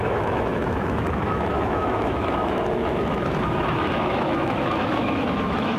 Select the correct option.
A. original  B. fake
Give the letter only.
B